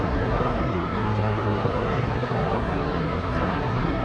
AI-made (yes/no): yes